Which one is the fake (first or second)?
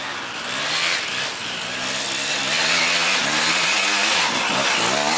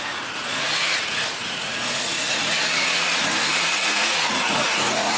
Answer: second